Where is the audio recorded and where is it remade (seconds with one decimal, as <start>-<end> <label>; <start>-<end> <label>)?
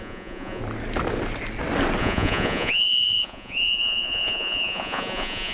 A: 0.0-0.6 remade; 0.6-2.0 recorded; 2.0-5.5 remade